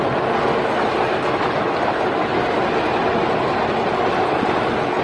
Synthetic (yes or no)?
no